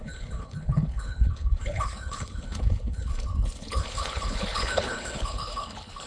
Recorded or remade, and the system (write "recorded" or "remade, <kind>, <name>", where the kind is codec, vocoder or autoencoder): remade, codec, HILCodec